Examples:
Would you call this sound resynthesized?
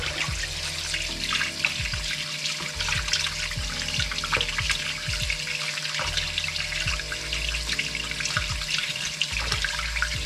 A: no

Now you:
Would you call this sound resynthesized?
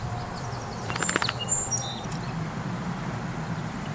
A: yes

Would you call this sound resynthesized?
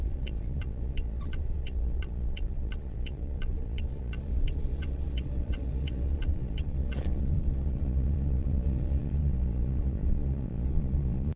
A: yes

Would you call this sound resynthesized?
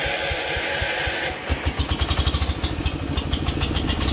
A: no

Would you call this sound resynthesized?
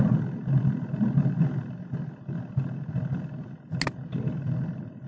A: no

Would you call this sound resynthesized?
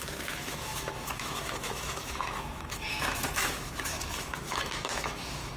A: yes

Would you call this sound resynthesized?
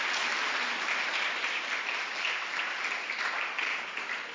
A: yes